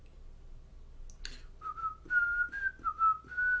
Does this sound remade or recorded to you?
recorded